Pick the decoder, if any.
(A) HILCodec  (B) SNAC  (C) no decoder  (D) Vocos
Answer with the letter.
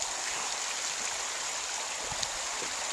C